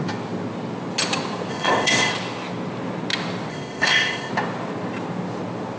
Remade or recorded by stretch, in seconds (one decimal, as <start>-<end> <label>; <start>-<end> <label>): 0.0-1.5 recorded; 1.5-2.1 remade; 2.1-3.5 recorded; 3.5-4.3 remade; 4.3-5.8 recorded